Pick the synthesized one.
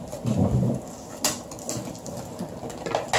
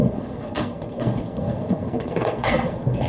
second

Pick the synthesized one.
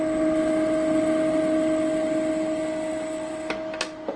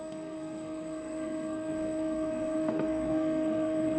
second